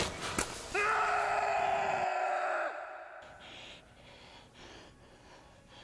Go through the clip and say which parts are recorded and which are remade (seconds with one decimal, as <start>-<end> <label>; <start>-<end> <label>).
0.0-5.8 recorded